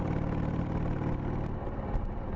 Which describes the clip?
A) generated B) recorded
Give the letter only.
B